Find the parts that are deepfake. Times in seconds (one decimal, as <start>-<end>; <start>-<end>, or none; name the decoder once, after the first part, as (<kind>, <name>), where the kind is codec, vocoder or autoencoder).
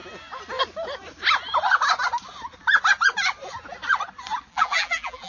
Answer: 4.5-5.3 (vocoder, BigVGAN v2)